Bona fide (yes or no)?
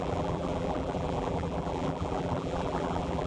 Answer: no